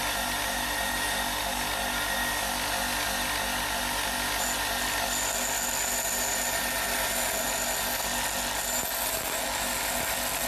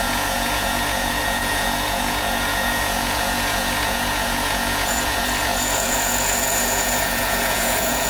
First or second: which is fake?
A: second